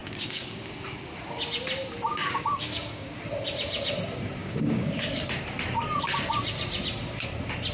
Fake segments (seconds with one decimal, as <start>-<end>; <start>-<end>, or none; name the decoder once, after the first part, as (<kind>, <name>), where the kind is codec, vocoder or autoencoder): 0.0-0.7 (codec, DAC); 2.1-3.2; 4.4-5.2